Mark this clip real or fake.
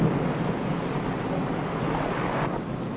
real